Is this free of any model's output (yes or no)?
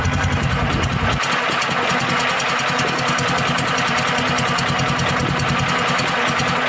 yes